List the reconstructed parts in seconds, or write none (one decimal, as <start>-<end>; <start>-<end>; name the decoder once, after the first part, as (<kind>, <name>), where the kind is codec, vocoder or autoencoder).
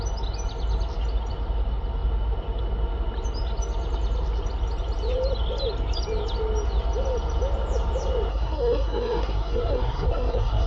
8.3-10.7 (codec, SNAC)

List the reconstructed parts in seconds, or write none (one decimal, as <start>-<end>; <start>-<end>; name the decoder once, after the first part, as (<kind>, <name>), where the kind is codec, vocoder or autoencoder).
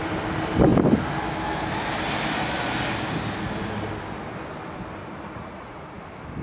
5.0-6.0 (vocoder, Vocos)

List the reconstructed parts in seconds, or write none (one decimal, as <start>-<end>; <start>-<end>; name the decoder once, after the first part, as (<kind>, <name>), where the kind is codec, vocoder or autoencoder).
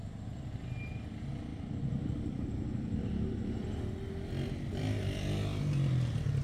1.5-3.0 (vocoder, BigVGAN v2)